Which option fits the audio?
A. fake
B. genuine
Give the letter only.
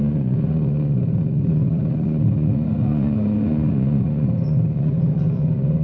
A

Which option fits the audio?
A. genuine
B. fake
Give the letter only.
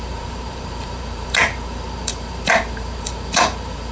B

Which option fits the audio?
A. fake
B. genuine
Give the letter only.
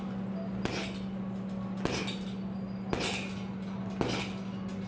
B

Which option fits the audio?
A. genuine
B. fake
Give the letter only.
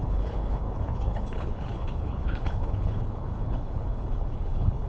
B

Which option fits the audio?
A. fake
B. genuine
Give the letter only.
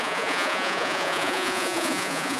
A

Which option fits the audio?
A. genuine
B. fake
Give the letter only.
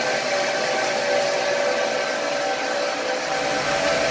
A